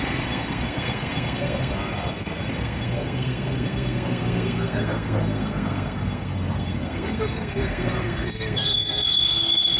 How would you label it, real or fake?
fake